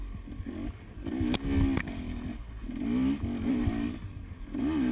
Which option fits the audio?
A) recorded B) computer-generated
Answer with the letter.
A